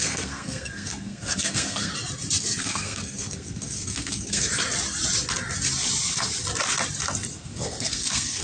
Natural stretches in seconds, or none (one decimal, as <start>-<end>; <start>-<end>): 1.9-2.6; 4.5-7.3